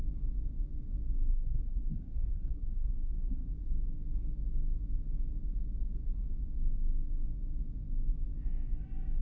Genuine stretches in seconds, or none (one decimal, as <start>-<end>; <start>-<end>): 0.0-1.3; 3.5-9.2